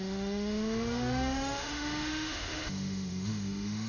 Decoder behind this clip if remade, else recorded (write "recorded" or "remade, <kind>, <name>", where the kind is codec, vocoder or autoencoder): remade, autoencoder, DAC-VAE